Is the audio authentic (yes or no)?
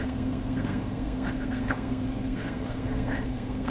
no